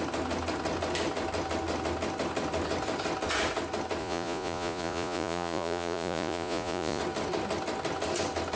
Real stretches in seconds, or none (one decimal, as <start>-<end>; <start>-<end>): 0.0-4.0; 7.0-8.6